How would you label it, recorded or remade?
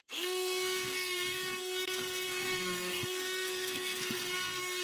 remade